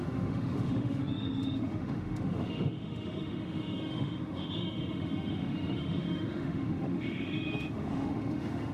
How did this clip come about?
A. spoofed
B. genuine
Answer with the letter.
A